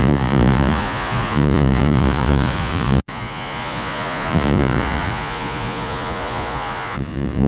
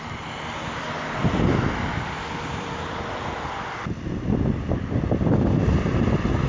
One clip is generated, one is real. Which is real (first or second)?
second